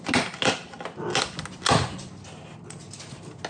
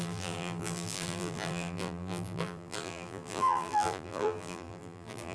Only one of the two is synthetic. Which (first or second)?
second